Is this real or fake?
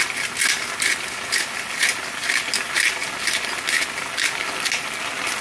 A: real